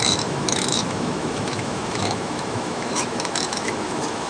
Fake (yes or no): yes